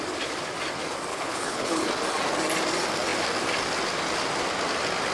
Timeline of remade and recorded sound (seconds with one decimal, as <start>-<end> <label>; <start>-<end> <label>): 0.0-1.1 recorded; 1.1-1.9 remade; 1.9-5.1 recorded